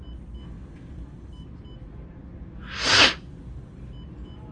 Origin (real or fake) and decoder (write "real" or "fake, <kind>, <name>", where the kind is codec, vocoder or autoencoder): real